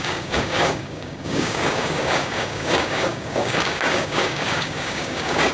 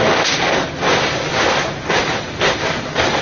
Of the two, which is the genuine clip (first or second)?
second